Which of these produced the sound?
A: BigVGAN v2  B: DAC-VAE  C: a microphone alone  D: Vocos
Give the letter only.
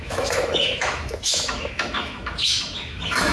B